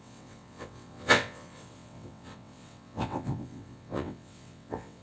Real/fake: fake